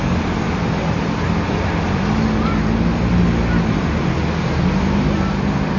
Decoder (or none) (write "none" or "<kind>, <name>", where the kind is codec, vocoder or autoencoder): none